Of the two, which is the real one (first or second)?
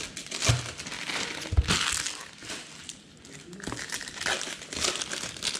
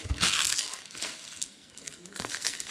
first